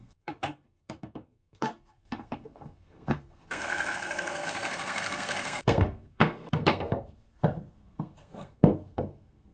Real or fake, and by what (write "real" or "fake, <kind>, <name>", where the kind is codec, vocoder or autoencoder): fake, codec, SNAC